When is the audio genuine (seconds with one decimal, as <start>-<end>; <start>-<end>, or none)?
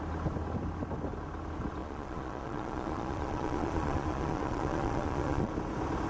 0.0-1.8; 5.5-6.1